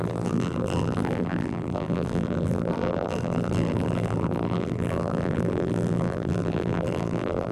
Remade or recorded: remade